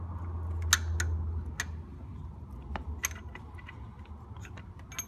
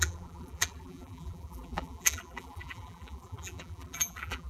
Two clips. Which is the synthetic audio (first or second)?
second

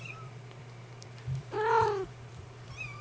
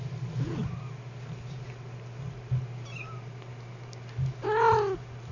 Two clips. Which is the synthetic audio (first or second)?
first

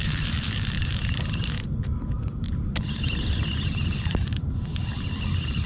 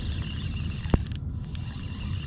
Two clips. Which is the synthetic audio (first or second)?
first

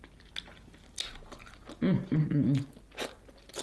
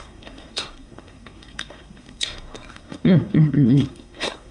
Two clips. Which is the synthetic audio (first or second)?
second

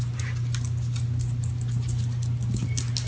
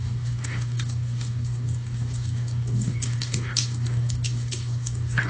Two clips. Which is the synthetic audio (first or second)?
second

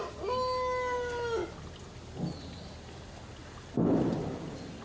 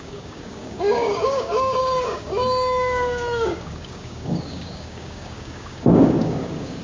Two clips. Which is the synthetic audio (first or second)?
second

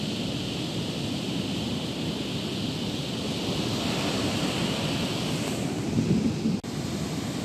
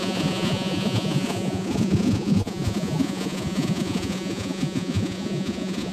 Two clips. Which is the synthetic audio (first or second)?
second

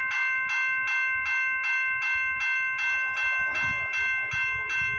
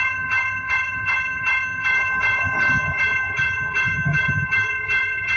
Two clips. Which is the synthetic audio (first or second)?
second